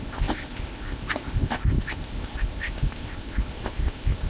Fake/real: fake